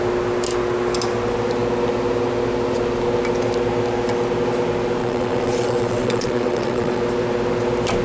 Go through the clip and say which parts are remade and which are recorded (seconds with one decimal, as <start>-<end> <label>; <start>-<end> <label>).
0.0-5.0 recorded; 5.0-7.0 remade; 7.0-8.0 recorded

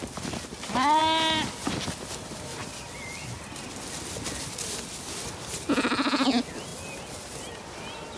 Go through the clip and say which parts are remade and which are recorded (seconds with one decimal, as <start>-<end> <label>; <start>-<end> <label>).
0.0-8.2 recorded

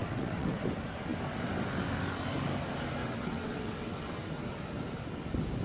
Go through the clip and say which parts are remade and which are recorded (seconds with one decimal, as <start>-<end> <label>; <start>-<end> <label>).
0.0-0.6 remade; 0.6-3.0 recorded; 3.0-4.2 remade; 4.2-5.6 recorded

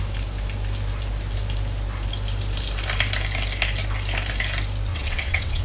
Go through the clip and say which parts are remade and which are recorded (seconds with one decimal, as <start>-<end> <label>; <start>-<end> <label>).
0.0-4.9 recorded; 4.9-5.6 remade